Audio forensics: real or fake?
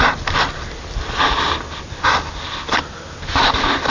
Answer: real